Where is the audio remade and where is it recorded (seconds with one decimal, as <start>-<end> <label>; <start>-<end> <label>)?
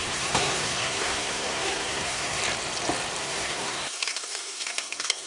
0.0-2.4 remade; 2.4-3.2 recorded; 3.2-5.3 remade